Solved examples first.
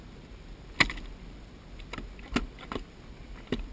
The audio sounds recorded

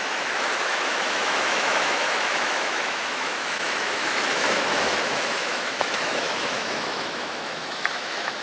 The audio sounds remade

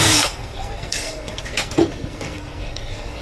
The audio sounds remade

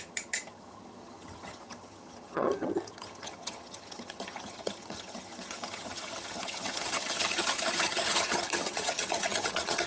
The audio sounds remade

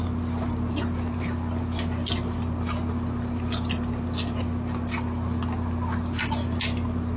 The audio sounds recorded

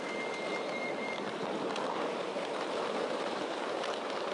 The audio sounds recorded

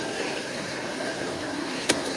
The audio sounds remade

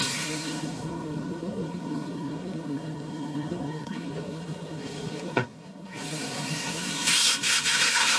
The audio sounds remade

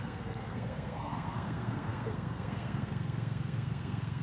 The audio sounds remade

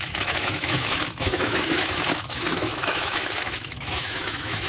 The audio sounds remade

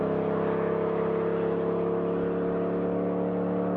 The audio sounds recorded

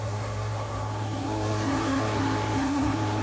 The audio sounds remade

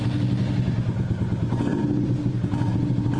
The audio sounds recorded